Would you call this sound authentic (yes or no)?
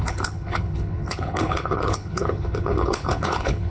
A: no